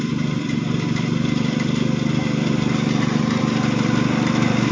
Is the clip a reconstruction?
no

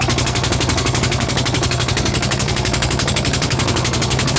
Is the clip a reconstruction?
yes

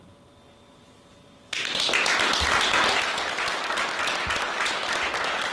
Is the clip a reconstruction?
no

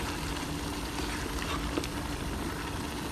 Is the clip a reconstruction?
no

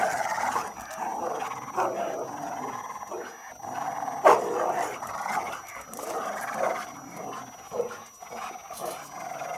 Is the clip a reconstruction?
no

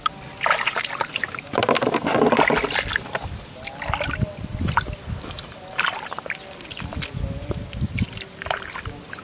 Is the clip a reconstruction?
no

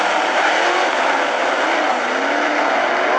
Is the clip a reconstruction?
no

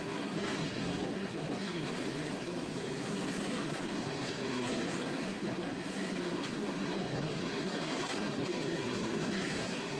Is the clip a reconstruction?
yes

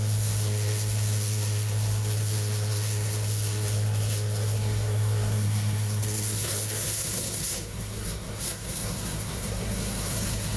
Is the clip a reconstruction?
yes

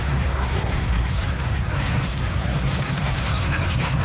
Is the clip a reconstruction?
yes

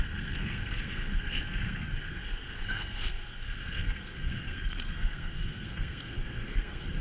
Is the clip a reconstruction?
yes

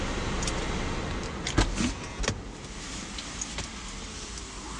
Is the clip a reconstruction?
no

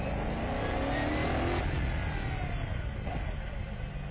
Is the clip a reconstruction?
no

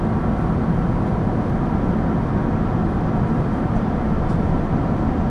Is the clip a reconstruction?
no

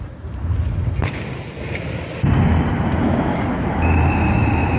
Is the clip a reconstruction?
no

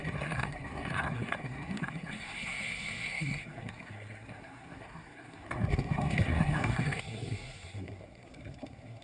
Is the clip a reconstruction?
yes